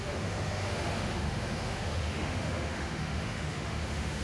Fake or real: fake